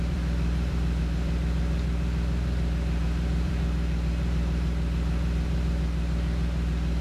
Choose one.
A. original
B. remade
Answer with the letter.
B